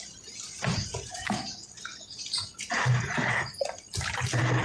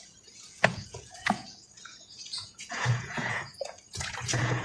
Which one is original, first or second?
first